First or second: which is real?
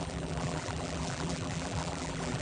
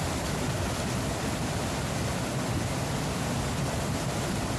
second